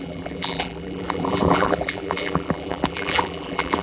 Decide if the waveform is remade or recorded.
remade